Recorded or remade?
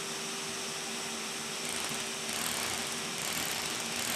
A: recorded